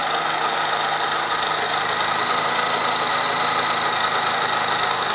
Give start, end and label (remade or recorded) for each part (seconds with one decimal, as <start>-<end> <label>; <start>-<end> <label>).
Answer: 0.0-5.1 recorded